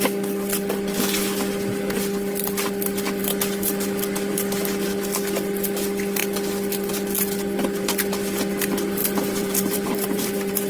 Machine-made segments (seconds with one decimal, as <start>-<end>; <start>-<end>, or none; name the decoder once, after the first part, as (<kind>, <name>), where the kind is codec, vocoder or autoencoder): 9.0-10.7 (vocoder, BigVGAN v2)